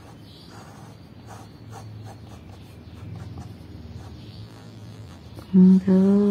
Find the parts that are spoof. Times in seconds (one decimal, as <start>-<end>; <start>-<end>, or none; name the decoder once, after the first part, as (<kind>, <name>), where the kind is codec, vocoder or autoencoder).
4.3-5.2 (vocoder, BigVGAN v2)